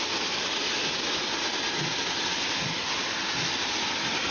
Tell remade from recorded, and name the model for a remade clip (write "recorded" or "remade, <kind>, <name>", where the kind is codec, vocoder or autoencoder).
recorded